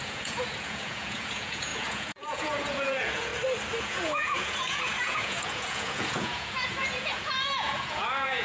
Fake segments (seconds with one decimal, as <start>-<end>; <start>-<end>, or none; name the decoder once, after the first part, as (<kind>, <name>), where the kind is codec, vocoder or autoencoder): 0.0-3.3 (vocoder, Vocos); 3.8-8.4